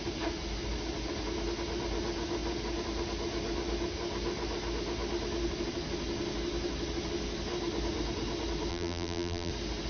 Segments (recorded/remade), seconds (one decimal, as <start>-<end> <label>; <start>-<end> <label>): 0.0-8.7 recorded; 8.7-9.5 remade; 9.5-9.9 recorded